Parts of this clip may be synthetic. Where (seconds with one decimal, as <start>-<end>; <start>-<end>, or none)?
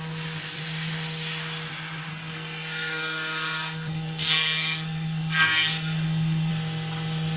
2.1-6.5